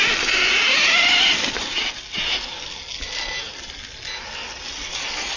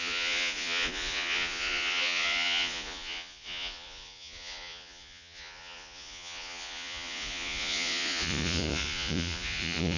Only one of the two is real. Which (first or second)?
first